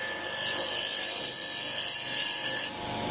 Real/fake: real